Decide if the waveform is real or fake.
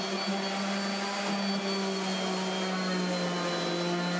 real